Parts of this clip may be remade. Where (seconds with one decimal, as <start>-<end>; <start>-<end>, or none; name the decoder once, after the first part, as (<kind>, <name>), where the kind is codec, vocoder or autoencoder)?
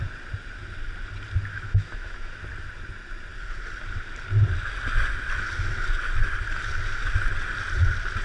1.5-2.4 (autoencoder, DAC-VAE)